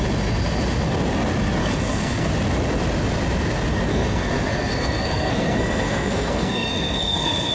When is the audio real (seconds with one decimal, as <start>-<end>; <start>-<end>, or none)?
0.0-1.6; 2.3-3.9